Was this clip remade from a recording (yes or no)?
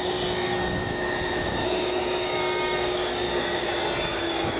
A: yes